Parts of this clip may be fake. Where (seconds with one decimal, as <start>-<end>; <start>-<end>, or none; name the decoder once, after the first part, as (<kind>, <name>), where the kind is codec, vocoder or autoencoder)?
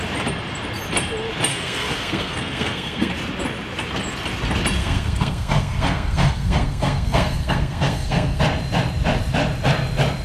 1.5-3.1 (codec, SNAC); 4.8-8.4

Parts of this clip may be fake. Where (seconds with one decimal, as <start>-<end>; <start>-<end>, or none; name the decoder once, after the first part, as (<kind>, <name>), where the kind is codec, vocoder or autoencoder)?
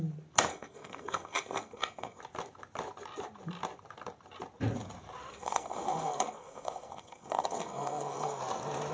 0.5-2.2 (codec, SNAC); 5.3-8.4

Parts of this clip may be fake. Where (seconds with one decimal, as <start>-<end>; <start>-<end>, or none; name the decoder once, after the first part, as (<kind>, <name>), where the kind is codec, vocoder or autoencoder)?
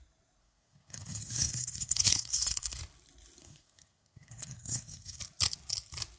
0.4-2.8 (codec, SNAC); 3.4-5.2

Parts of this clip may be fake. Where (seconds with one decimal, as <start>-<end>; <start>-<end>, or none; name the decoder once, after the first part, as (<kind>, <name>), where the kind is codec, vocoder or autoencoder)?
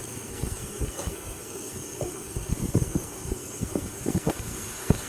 0.0-5.1 (codec, SNAC)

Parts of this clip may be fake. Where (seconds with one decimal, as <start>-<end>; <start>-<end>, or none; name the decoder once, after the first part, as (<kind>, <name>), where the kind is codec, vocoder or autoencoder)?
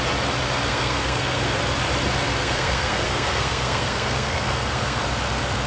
0.7-1.6 (codec, SNAC); 2.4-5.0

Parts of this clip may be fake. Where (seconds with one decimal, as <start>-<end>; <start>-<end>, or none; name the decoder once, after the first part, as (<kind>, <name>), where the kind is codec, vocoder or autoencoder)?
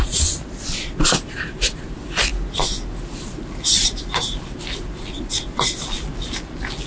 none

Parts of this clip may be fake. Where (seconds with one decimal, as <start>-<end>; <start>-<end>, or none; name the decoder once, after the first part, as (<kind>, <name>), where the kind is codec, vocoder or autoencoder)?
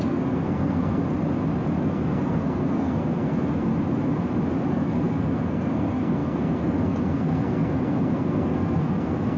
0.0-1.0 (codec, SNAC); 1.8-3.7; 4.7-9.4